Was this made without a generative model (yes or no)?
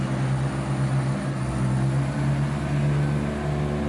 yes